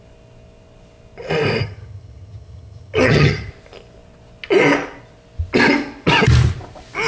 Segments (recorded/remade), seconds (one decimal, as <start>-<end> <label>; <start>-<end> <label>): 0.0-1.6 recorded; 1.6-3.5 remade; 3.5-7.1 recorded